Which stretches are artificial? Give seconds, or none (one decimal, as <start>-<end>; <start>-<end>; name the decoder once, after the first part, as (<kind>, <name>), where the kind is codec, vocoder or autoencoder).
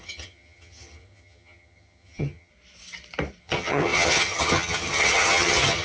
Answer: 0.0-2.5 (vocoder, HiFi-GAN); 3.4-5.8